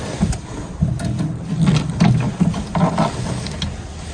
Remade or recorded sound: recorded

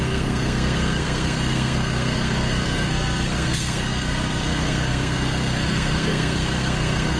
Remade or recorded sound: remade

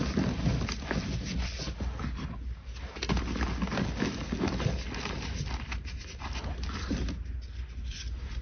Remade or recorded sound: recorded